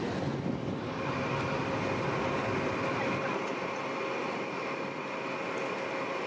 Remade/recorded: recorded